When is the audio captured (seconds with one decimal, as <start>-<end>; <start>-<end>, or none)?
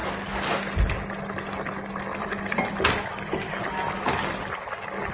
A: 0.0-5.1